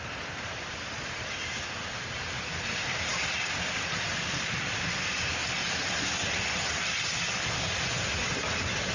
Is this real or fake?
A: real